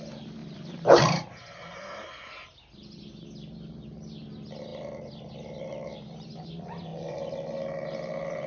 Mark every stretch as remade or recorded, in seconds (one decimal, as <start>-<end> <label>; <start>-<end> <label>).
0.0-0.4 recorded; 0.4-2.1 remade; 2.1-8.5 recorded

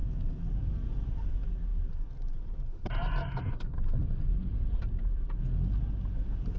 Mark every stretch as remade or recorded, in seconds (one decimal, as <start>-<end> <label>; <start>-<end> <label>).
0.0-1.1 remade; 1.1-1.7 recorded; 1.7-5.4 remade; 5.4-6.6 recorded

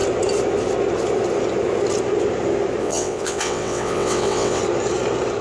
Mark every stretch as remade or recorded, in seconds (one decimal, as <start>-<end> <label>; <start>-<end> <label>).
0.0-2.8 recorded; 2.8-4.6 remade; 4.6-5.4 recorded